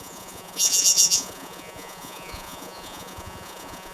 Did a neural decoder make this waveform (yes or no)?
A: yes